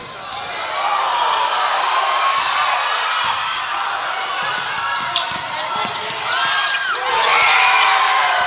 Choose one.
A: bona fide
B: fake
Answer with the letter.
A